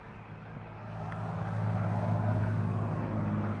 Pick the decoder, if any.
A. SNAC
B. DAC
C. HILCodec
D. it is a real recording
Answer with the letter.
B